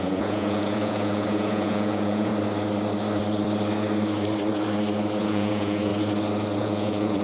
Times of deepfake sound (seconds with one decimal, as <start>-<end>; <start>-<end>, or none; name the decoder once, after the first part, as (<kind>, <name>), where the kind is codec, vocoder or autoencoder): 0.0-2.3 (vocoder, Vocos); 5.2-5.9; 6.6-7.2